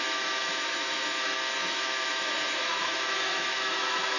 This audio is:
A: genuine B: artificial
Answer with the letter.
B